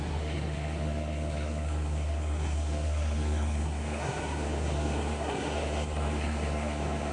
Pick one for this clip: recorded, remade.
remade